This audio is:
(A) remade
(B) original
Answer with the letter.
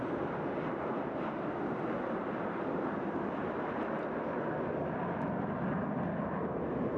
B